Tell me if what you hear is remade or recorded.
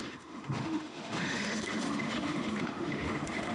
remade